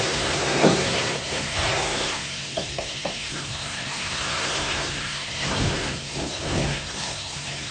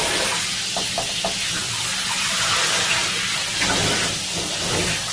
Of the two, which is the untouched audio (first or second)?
second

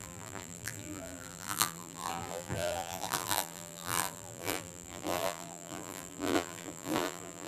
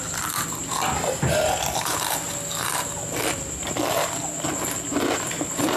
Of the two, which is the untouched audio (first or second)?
second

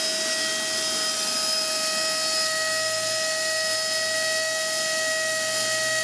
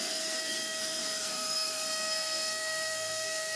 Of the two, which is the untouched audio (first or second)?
first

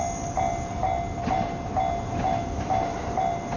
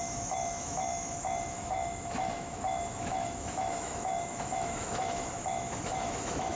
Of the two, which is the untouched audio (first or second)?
first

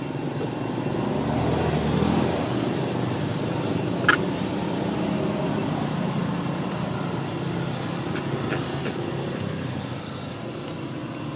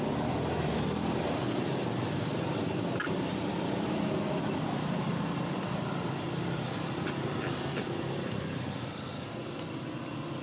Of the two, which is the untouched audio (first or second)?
first